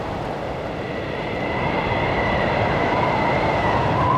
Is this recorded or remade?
remade